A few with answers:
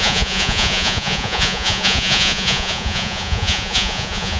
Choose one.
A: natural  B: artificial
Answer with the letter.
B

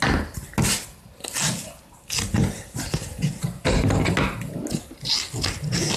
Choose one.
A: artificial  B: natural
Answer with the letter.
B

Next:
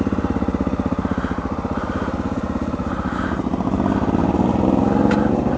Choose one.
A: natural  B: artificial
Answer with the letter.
A